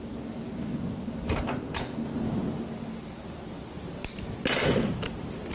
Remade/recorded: recorded